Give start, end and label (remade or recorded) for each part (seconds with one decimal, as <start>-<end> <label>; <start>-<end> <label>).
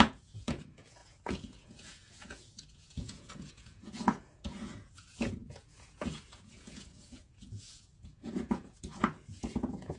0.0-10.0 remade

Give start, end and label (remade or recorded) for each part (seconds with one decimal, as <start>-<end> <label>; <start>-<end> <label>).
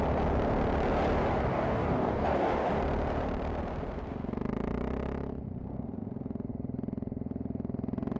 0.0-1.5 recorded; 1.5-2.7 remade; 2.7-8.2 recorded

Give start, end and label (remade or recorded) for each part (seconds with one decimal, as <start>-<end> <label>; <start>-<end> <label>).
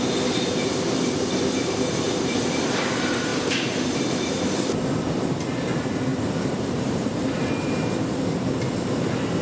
0.0-3.3 recorded; 3.3-4.4 remade; 4.4-6.1 recorded; 6.1-7.8 remade; 7.8-9.4 recorded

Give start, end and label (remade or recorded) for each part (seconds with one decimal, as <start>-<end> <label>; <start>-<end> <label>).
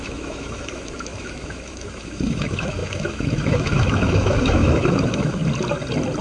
0.0-5.4 remade; 5.4-6.2 recorded